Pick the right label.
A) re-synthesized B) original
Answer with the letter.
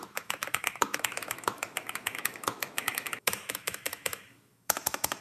A